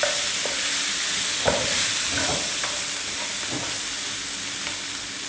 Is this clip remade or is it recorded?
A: recorded